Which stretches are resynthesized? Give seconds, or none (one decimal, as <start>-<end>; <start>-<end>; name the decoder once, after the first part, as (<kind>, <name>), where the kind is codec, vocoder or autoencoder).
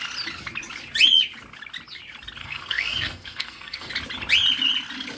2.4-3.9 (codec, SNAC)